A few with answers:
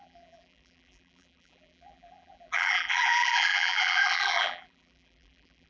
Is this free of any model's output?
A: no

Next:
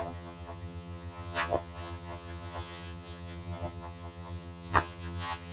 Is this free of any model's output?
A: no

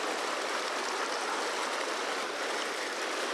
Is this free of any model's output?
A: yes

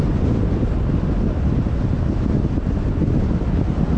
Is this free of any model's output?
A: yes